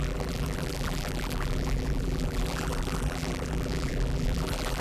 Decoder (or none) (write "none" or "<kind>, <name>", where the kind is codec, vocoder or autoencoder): vocoder, BigVGAN v2